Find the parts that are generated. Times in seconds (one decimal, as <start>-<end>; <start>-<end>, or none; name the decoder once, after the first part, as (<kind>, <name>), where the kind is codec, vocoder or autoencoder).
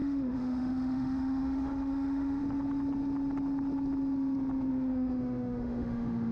0.0-2.4 (autoencoder, DAC-VAE); 4.7-6.3